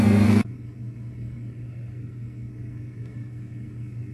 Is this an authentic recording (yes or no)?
no